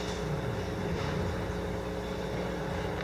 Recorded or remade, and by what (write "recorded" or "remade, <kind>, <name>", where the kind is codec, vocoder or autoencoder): recorded